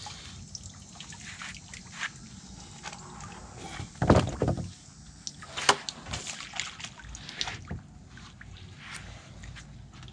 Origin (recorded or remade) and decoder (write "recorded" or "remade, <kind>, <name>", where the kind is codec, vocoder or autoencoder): recorded